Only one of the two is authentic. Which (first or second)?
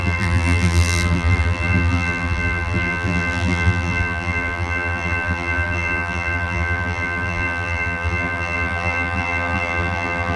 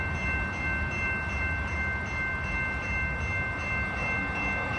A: second